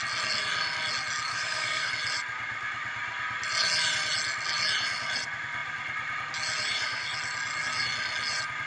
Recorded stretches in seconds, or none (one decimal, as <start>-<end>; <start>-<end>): 0.0-1.3; 1.9-8.7